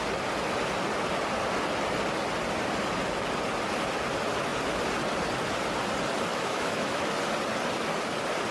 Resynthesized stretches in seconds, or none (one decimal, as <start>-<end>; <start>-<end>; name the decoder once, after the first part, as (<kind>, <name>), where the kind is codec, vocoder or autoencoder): 6.3-7.1 (autoencoder, DAC-VAE)